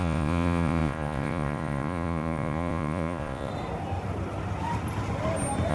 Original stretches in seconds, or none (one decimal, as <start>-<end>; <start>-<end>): 3.5-5.7